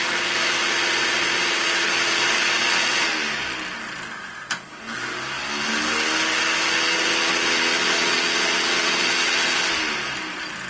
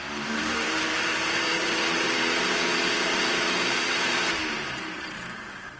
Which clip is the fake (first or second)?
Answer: second